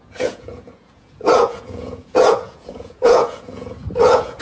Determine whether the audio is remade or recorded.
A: remade